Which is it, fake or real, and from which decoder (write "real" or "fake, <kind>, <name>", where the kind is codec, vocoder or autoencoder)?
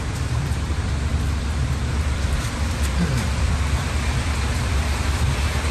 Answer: fake, vocoder, BigVGAN v2